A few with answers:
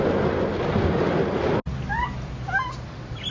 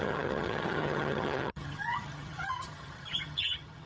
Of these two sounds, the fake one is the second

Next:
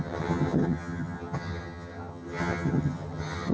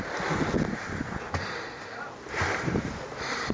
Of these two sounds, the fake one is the first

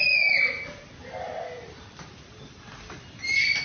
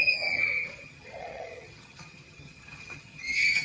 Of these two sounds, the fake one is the second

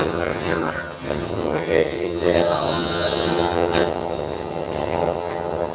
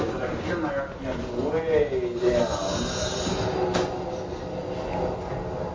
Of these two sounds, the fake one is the first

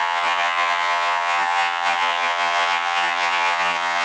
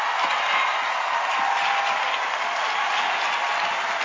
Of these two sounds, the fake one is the first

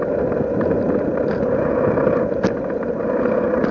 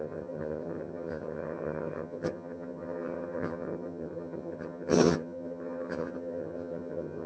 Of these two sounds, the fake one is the second